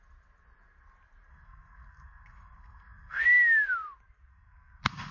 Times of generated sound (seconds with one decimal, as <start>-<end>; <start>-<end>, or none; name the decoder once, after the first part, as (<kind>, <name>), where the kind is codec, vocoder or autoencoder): 1.3-3.2 (codec, SNAC); 4.3-5.1